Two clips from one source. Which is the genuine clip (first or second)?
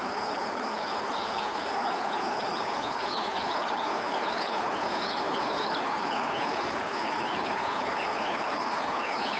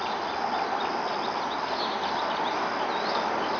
second